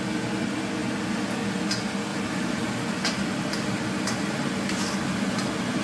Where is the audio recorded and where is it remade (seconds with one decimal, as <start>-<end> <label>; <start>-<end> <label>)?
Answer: 0.0-2.1 recorded; 2.1-2.7 remade; 2.7-5.8 recorded